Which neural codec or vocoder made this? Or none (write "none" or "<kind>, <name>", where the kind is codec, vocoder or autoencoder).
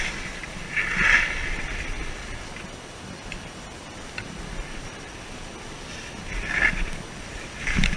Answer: none